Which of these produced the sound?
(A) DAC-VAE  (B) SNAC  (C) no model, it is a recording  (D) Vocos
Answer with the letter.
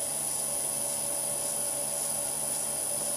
C